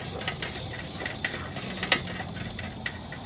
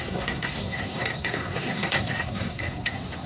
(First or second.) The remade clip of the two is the second